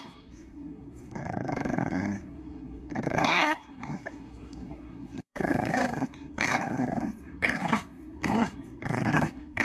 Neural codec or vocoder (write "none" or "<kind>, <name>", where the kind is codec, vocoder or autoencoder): codec, SNAC